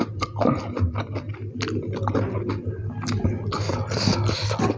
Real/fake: real